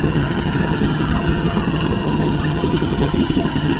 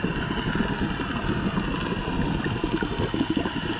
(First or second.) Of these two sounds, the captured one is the second